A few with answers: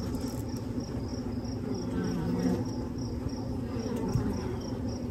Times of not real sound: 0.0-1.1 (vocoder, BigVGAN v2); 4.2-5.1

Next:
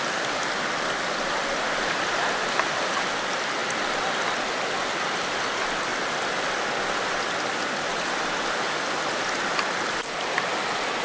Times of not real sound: none